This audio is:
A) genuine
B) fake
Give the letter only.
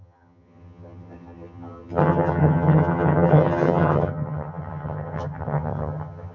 B